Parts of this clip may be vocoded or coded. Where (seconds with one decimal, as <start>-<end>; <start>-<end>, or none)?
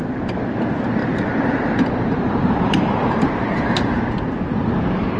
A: 1.0-4.1